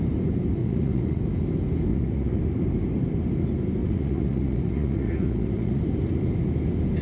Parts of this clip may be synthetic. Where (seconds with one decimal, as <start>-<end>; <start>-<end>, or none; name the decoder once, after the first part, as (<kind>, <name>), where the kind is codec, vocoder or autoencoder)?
0.6-1.2 (vocoder, Vocos); 1.9-2.4; 3.8-5.8